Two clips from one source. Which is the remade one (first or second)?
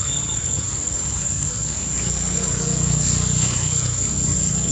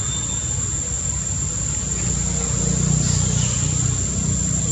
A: first